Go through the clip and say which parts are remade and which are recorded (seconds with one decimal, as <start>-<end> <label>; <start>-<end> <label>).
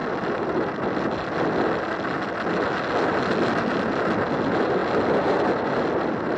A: 0.0-6.4 recorded